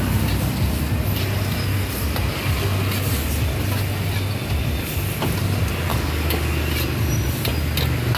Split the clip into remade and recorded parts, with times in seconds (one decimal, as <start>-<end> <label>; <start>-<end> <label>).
0.0-5.9 recorded; 5.9-6.6 remade; 6.6-8.2 recorded